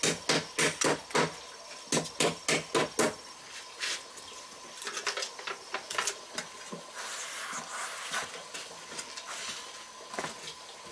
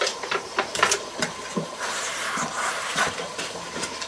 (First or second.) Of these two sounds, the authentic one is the first